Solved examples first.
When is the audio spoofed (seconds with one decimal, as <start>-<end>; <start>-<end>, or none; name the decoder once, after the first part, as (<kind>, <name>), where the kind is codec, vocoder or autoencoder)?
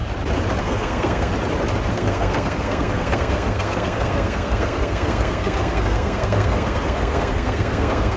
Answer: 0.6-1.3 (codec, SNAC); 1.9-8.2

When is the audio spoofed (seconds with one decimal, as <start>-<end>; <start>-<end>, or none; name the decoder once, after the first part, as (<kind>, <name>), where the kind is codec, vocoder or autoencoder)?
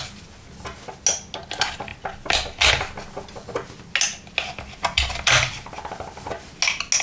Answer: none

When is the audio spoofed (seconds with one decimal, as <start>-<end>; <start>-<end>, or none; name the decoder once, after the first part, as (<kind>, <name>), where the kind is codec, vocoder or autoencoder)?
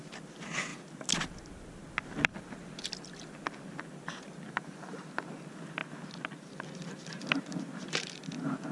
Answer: none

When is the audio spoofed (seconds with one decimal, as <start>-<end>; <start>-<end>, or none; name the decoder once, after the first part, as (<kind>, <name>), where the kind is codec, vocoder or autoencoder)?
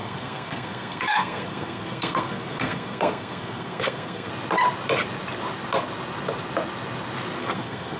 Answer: 0.0-4.3 (codec, SNAC); 7.4-8.0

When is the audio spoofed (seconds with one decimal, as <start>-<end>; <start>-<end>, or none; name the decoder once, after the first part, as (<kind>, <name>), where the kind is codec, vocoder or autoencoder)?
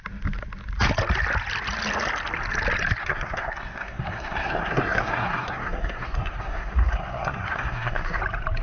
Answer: 3.0-8.2 (codec, SNAC)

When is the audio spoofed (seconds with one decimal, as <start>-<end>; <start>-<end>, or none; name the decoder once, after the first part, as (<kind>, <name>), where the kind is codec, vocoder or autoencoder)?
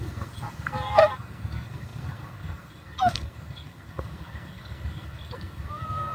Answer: 0.0-6.1 (codec, SNAC)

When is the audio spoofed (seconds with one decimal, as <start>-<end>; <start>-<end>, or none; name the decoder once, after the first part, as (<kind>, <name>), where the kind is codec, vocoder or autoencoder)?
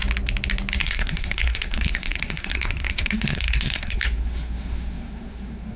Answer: 0.8-5.8 (codec, SNAC)